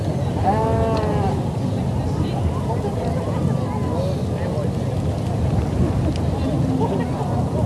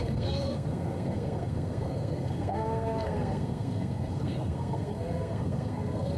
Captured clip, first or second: first